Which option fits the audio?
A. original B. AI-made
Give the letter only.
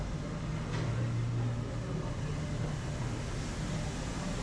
A